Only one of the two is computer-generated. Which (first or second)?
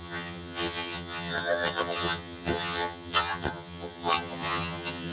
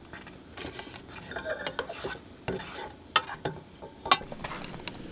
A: first